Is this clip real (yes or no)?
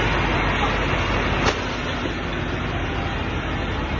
yes